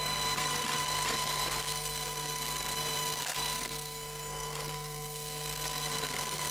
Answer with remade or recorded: remade